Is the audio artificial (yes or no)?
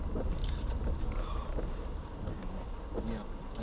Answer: no